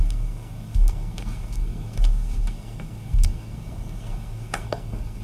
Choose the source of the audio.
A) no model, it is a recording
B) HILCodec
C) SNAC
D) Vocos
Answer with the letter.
C